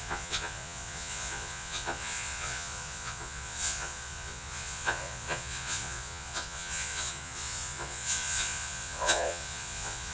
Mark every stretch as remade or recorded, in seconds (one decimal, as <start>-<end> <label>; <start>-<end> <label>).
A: 0.0-10.1 remade